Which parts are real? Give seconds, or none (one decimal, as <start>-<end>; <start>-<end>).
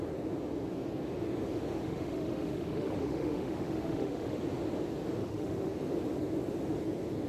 0.0-1.8; 4.4-5.2; 5.7-7.3